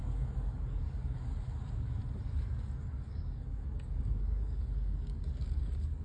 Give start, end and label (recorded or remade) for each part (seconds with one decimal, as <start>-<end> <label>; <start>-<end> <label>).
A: 0.0-2.0 remade; 2.0-3.0 recorded; 3.0-6.0 remade